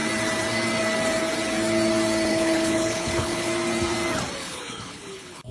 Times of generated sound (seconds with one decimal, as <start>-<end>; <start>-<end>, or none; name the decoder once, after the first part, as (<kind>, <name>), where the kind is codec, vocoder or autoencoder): 2.3-3.5 (codec, HILCodec); 4.4-5.5